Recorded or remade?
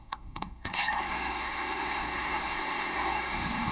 remade